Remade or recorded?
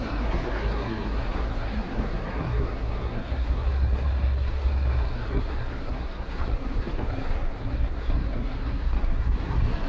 remade